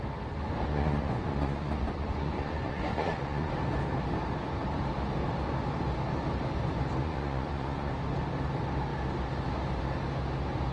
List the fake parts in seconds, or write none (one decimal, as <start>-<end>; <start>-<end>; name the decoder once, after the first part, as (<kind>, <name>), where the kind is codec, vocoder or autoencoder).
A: 0.7-3.5 (vocoder, Vocos); 7.0-7.9